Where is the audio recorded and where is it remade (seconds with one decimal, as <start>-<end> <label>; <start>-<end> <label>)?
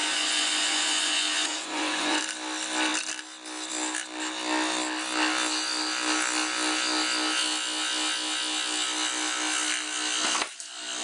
0.0-2.2 remade; 2.2-11.0 recorded